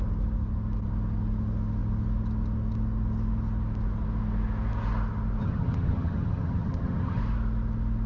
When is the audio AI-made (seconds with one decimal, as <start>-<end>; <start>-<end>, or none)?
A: 5.4-7.2